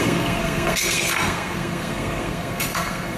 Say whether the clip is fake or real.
fake